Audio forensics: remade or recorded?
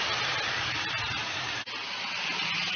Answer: recorded